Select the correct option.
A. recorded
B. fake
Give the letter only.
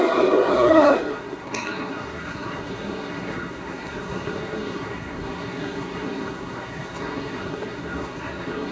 B